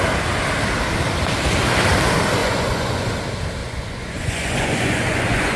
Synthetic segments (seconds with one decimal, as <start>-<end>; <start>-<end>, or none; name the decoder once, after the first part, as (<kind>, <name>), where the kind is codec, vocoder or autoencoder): 2.4-3.1 (vocoder, Vocos); 3.6-5.6